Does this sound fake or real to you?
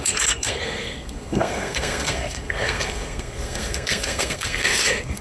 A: fake